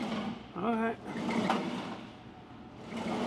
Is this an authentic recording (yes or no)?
yes